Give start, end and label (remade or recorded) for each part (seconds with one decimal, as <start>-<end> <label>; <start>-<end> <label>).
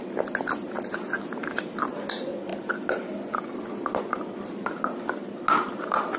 0.0-6.2 recorded